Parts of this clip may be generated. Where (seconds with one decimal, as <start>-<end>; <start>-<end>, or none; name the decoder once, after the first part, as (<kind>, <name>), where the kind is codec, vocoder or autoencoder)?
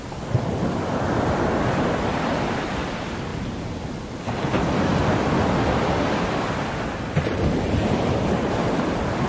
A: none